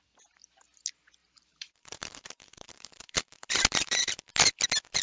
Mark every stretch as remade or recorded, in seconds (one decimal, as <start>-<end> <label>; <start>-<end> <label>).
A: 0.0-1.2 recorded; 1.2-4.2 remade; 4.2-5.0 recorded